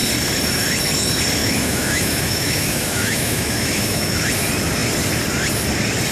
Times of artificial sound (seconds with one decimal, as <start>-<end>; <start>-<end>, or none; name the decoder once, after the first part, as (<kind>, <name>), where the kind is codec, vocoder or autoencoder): 1.4-4.3 (autoencoder, DAC-VAE)